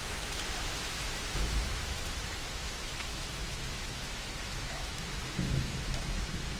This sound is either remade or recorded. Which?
remade